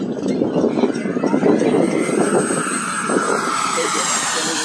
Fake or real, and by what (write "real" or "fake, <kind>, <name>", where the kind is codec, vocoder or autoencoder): real